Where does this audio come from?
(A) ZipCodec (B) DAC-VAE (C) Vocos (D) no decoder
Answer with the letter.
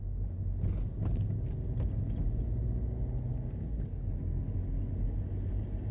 D